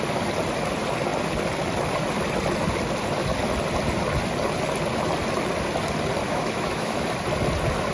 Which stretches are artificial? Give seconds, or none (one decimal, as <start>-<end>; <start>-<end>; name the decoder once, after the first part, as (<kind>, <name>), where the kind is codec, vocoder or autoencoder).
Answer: 6.2-7.1 (autoencoder, DAC-VAE)